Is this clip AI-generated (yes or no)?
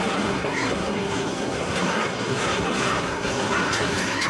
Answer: yes